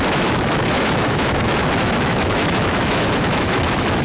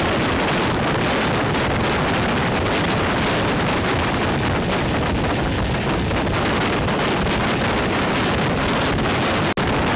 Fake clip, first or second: first